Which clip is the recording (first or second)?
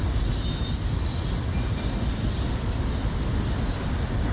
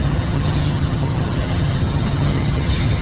first